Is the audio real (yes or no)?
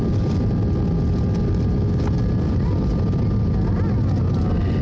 yes